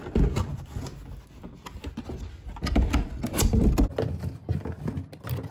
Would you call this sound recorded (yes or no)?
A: yes